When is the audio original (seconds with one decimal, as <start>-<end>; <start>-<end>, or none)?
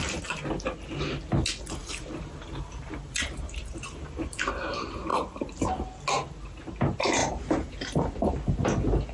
0.0-1.8; 4.4-7.2; 7.7-9.1